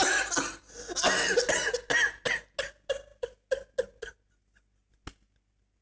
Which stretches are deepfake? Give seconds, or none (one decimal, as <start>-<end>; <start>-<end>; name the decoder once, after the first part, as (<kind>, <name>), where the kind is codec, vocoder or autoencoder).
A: none